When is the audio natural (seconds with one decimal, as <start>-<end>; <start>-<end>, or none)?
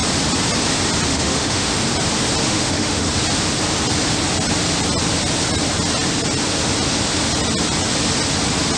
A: 0.0-1.1; 1.7-2.4; 3.1-8.8